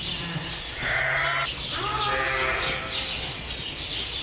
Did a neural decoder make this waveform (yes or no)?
no